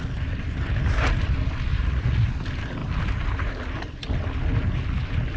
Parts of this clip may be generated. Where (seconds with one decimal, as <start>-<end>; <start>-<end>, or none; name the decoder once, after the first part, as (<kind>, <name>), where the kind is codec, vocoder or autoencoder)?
1.7-2.3 (vocoder, Vocos)